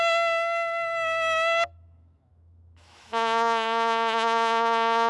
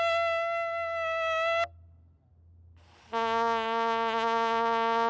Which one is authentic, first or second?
second